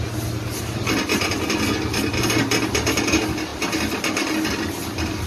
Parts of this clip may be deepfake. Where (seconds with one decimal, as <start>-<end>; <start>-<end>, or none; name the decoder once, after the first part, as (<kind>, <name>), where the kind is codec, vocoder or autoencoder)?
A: none